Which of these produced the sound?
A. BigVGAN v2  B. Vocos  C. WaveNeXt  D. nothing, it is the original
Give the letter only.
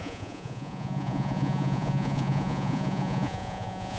B